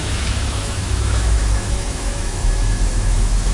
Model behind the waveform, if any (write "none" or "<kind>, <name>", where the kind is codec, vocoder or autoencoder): autoencoder, DAC-VAE